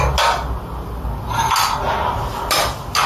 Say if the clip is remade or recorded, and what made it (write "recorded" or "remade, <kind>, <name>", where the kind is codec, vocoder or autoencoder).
recorded